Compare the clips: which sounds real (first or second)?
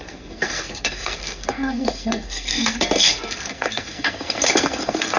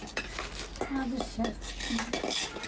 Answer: second